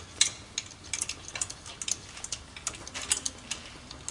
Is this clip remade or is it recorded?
recorded